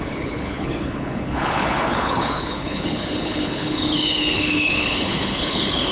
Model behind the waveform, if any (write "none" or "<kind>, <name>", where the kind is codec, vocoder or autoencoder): codec, HILCodec